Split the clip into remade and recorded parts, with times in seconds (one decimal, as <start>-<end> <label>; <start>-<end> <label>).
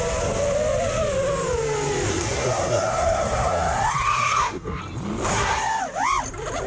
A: 0.0-2.1 recorded; 2.1-4.8 remade; 4.8-5.3 recorded; 5.3-5.8 remade; 5.8-6.7 recorded